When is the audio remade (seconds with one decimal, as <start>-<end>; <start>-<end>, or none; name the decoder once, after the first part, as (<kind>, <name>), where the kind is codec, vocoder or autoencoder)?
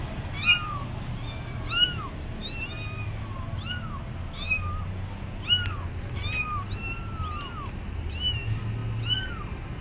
none